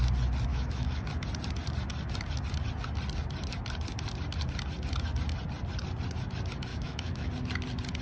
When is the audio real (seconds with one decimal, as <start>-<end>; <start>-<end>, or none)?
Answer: 0.0-0.5; 1.1-6.7; 7.3-8.0